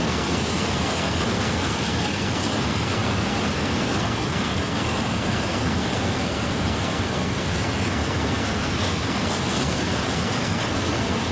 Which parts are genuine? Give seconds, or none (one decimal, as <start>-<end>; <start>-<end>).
none